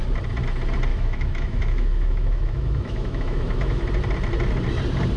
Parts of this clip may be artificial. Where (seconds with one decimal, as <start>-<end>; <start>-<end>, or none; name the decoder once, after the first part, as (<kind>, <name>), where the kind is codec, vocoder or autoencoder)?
0.9-3.8 (autoencoder, DAC-VAE)